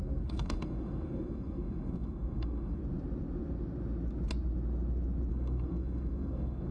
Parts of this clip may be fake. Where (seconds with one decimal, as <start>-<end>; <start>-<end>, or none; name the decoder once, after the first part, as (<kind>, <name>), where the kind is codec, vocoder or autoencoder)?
0.0-2.8 (codec, SNAC); 5.3-6.7